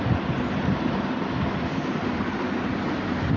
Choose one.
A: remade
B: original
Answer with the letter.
B